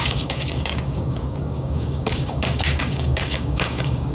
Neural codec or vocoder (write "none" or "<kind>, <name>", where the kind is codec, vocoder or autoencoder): codec, DAC